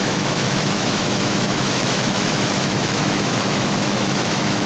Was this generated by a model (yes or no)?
yes